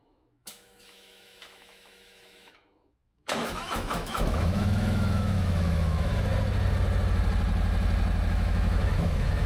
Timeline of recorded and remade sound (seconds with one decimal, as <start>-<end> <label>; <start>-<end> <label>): 0.0-6.3 remade; 6.3-8.3 recorded; 8.3-9.5 remade